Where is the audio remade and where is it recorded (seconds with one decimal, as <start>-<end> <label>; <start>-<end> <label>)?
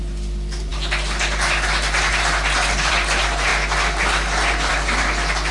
0.0-5.5 recorded